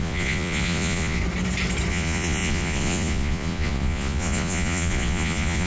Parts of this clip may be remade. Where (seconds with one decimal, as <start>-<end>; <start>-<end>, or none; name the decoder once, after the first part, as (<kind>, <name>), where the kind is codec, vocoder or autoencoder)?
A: 0.0-1.2 (vocoder, Vocos); 1.9-5.7